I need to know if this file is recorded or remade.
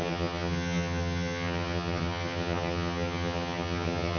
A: remade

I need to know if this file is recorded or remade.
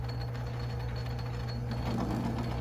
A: recorded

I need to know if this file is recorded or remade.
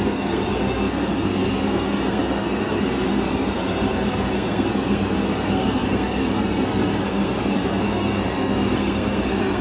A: remade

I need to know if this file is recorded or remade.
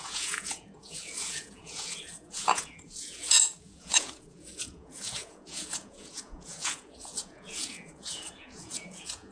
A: remade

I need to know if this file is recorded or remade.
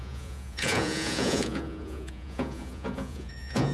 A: remade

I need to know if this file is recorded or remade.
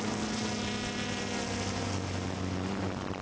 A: recorded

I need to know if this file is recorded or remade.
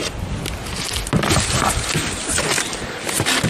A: recorded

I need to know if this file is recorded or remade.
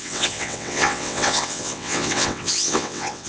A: remade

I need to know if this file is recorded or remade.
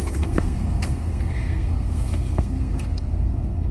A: remade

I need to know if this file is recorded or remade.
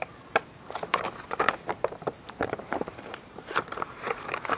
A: remade